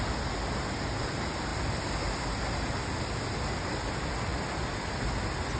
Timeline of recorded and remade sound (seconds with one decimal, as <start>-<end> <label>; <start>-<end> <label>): 0.0-5.6 recorded